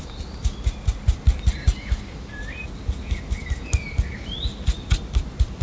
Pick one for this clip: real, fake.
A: real